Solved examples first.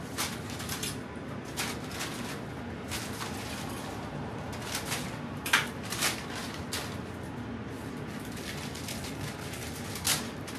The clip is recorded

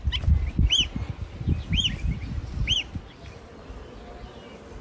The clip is recorded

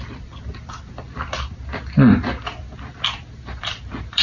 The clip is remade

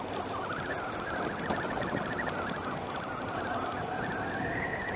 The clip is recorded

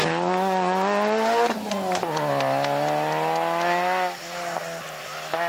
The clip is recorded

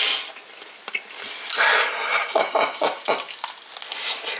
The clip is recorded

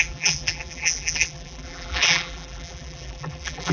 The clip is remade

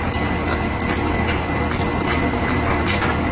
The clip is recorded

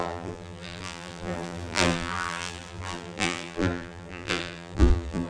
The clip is remade